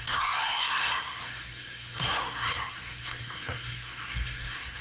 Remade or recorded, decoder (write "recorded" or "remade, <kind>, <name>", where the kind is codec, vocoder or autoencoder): remade, codec, SNAC